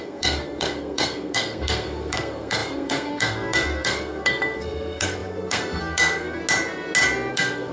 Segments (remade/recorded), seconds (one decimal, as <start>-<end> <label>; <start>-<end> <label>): 0.0-6.4 remade; 6.4-7.3 recorded; 7.3-7.7 remade